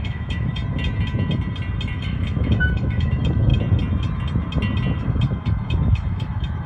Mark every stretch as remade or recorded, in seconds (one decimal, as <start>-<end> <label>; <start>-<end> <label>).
0.0-0.6 remade; 0.6-2.0 recorded; 2.0-3.5 remade; 3.5-5.0 recorded; 5.0-6.7 remade